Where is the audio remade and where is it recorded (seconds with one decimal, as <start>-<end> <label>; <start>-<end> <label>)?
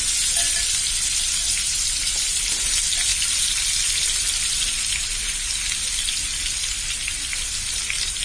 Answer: 0.0-8.2 recorded